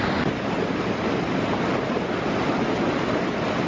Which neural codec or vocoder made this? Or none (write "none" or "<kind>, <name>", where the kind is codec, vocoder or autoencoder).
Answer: none